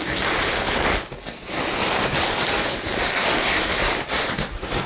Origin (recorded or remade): recorded